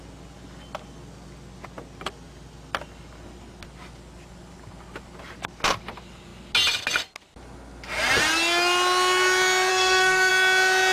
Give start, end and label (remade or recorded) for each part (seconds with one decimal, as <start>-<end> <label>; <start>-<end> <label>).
0.0-9.7 recorded; 9.7-10.3 remade; 10.3-10.9 recorded